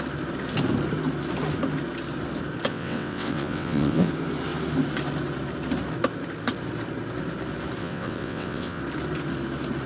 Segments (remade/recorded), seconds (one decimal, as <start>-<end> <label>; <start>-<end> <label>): 0.0-2.7 recorded; 2.7-4.1 remade; 4.1-7.8 recorded; 7.8-8.8 remade; 8.8-9.9 recorded